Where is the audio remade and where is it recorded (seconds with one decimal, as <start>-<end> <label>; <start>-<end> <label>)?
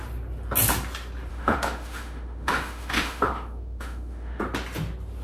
0.0-1.3 recorded; 1.3-4.4 remade; 4.4-5.2 recorded